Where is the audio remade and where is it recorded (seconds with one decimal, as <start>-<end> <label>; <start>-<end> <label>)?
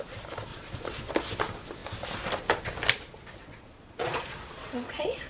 0.0-0.5 recorded; 0.5-1.1 remade; 1.1-3.4 recorded; 3.4-5.3 remade